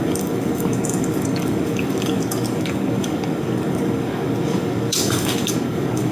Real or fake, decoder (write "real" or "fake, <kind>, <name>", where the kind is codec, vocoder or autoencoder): fake, codec, DAC